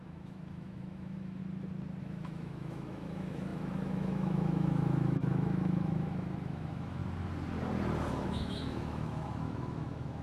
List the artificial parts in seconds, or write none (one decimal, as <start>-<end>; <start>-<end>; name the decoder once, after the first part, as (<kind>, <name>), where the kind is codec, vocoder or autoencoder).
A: 0.0-1.4 (autoencoder, DAC-VAE); 2.0-7.0; 8.1-10.2